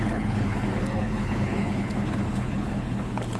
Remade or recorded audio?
remade